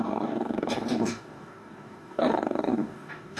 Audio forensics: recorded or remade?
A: remade